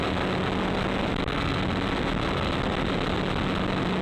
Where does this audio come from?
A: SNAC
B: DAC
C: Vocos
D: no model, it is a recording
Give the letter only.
D